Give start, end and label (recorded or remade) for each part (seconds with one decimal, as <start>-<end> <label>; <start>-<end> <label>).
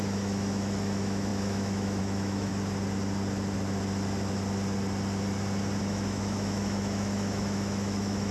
0.0-2.5 remade; 2.5-5.8 recorded; 5.8-8.3 remade